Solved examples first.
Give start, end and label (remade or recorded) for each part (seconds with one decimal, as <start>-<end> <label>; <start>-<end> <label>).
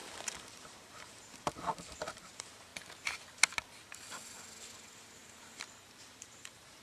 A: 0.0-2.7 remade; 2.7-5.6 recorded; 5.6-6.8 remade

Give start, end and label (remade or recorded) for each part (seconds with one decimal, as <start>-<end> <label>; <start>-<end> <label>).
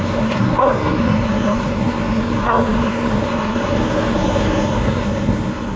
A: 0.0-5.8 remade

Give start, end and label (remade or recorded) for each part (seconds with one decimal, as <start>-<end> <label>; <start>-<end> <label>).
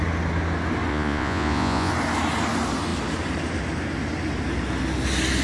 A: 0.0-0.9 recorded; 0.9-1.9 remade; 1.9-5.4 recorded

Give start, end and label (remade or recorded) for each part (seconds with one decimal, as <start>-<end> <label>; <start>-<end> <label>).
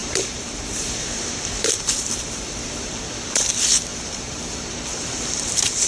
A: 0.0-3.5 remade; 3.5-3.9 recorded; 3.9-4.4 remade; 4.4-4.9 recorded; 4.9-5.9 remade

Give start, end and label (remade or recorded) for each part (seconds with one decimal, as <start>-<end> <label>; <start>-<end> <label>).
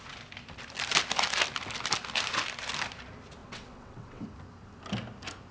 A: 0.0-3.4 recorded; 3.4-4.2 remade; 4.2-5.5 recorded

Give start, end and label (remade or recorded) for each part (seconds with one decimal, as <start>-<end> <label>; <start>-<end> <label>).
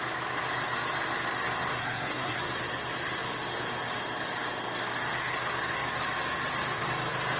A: 0.0-1.8 recorded; 1.8-2.4 remade; 2.4-7.4 recorded